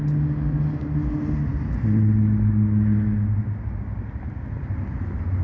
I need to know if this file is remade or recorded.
recorded